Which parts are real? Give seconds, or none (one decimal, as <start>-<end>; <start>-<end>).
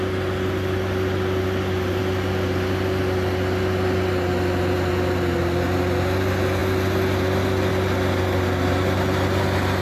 0.0-9.8